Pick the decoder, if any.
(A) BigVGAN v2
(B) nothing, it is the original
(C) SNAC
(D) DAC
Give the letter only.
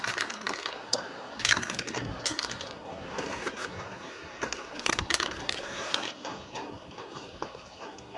C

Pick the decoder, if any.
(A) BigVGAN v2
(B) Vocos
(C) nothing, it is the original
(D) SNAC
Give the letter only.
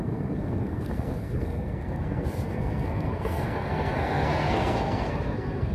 D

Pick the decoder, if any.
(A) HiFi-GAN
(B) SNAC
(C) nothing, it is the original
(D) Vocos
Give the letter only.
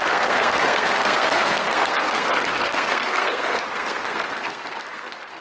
B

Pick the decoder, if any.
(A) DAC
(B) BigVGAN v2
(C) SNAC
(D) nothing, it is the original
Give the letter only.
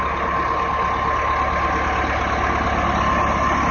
D